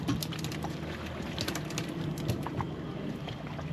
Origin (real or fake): real